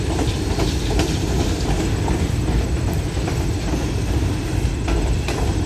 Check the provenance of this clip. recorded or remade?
recorded